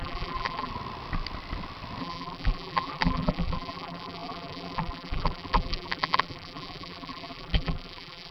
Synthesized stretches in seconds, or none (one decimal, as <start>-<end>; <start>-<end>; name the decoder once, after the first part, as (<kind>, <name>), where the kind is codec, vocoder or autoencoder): 0.0-0.7 (vocoder, BigVGAN v2); 2.0-8.3